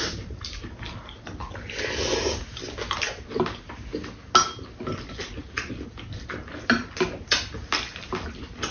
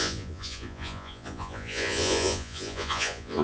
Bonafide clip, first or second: first